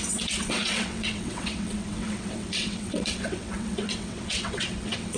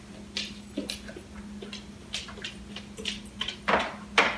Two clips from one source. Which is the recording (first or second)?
second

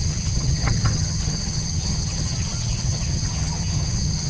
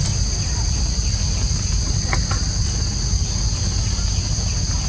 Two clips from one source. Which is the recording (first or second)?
second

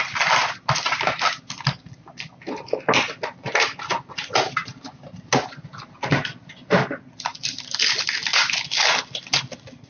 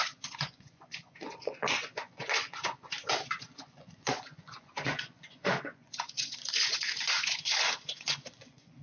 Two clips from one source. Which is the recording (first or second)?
first